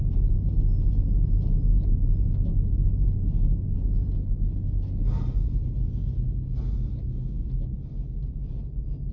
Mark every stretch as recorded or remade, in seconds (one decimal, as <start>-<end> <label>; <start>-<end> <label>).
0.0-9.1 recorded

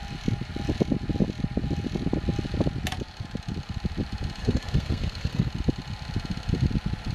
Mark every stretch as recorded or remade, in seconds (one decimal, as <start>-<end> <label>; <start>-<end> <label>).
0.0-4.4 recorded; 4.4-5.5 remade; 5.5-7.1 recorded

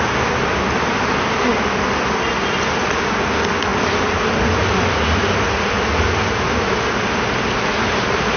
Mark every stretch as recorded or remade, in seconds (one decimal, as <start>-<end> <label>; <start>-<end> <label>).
0.0-8.4 recorded

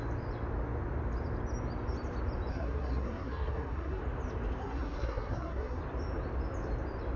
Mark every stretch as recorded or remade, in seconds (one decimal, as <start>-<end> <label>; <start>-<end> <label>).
0.0-2.5 recorded; 2.5-4.0 remade; 4.0-4.6 recorded; 4.6-5.8 remade; 5.8-7.2 recorded

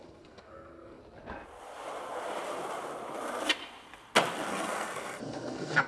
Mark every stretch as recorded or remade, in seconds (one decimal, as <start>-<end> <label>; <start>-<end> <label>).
0.0-1.0 remade; 1.0-4.5 recorded; 4.5-5.9 remade

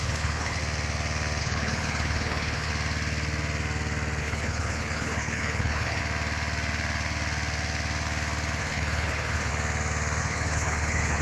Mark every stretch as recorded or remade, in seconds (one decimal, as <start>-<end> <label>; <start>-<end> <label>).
0.0-0.6 remade; 0.6-1.4 recorded; 1.4-2.7 remade; 2.7-4.2 recorded; 4.2-6.0 remade; 6.0-8.6 recorded; 8.6-9.5 remade; 9.5-10.2 recorded; 10.2-11.2 remade